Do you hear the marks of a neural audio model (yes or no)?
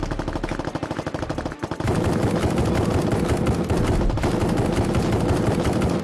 no